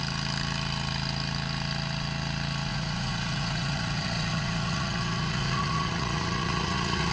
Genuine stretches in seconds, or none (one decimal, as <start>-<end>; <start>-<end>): 0.0-2.7